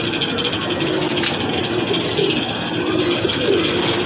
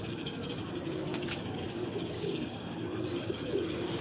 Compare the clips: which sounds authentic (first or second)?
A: first